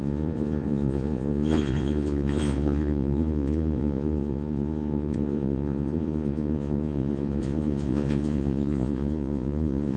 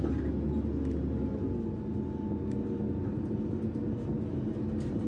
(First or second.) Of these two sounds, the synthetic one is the first